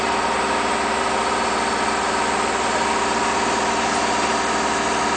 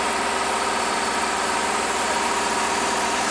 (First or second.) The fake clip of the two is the second